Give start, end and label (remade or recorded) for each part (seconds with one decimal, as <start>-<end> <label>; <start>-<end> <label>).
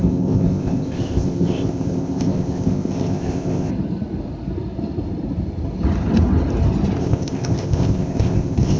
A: 0.0-3.7 remade; 3.7-7.0 recorded; 7.0-8.8 remade